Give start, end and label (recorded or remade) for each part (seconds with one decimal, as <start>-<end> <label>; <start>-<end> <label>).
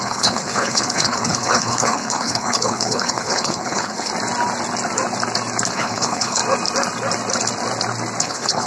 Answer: 0.0-4.1 remade; 4.1-5.7 recorded; 5.7-6.4 remade; 6.4-8.2 recorded; 8.2-8.7 remade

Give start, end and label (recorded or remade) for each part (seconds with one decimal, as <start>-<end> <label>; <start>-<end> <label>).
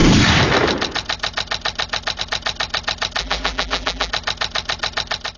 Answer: 0.0-3.2 recorded; 3.2-4.1 remade; 4.1-5.4 recorded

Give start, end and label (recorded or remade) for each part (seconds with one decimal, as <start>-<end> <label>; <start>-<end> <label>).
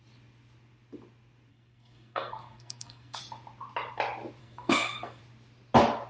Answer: 0.0-1.5 recorded; 1.5-3.2 remade; 3.2-4.4 recorded; 4.4-5.2 remade; 5.2-6.1 recorded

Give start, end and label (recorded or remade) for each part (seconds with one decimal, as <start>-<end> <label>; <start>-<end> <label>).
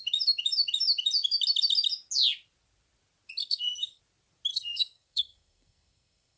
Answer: 0.0-3.4 recorded; 3.4-4.0 remade; 4.0-4.5 recorded; 4.5-6.4 remade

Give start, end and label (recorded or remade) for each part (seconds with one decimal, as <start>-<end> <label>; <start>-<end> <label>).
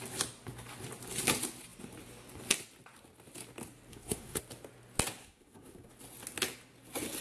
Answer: 0.0-3.9 recorded; 3.9-4.4 remade; 4.4-5.2 recorded; 5.2-5.9 remade; 5.9-7.2 recorded